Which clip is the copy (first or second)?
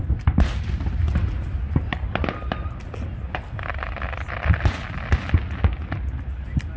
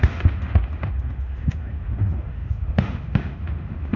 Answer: second